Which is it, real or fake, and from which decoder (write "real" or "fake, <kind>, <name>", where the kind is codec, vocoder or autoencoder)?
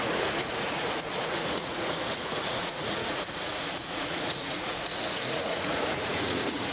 fake, vocoder, Vocos